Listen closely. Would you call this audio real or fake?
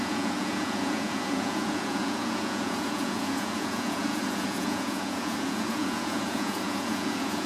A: fake